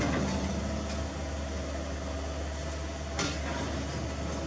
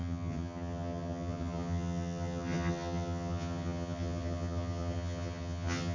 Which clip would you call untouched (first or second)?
first